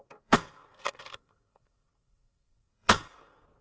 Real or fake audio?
fake